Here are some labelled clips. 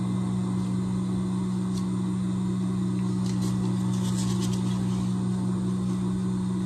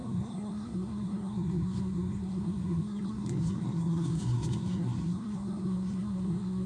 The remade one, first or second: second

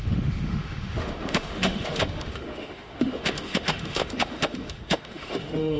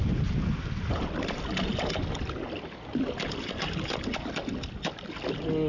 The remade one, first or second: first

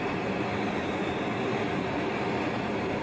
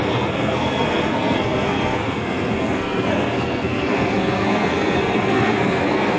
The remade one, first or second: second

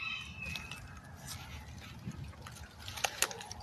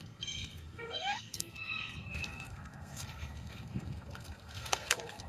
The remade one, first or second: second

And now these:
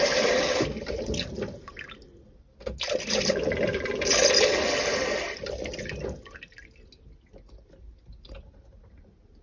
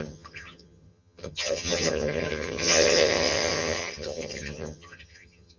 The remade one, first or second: second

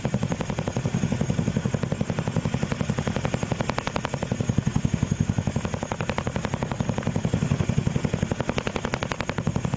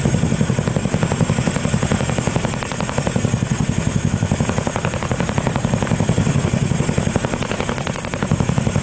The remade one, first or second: second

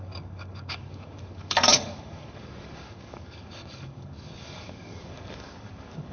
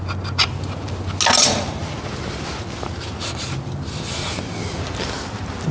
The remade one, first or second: first